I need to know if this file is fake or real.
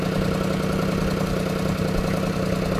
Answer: real